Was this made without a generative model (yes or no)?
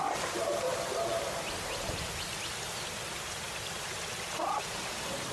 yes